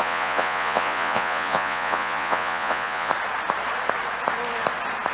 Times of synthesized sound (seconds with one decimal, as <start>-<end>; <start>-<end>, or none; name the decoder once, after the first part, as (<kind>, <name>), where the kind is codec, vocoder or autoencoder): 0.0-3.1 (vocoder, Vocos)